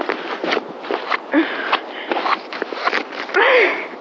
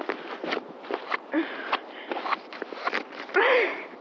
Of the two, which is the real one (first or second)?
first